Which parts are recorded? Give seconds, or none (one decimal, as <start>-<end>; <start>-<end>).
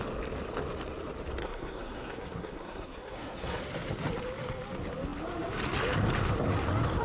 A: 0.0-1.4; 3.6-7.0